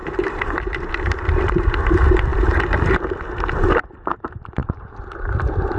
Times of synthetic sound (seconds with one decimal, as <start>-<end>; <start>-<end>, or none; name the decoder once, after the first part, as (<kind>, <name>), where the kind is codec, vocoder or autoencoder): 0.0-0.9 (vocoder, BigVGAN v2); 4.6-5.8